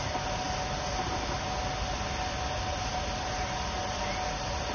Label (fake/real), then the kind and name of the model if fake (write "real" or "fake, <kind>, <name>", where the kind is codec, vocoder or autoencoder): real